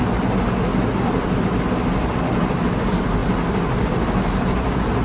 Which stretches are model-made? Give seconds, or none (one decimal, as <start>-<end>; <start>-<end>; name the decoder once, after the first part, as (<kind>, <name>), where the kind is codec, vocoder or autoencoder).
none